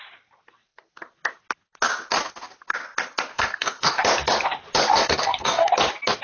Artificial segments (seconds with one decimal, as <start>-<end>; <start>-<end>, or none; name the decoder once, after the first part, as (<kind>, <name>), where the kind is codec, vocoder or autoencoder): 3.3-4.0 (codec, DAC); 4.9-5.7